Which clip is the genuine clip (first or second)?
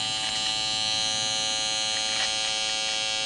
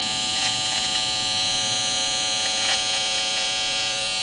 first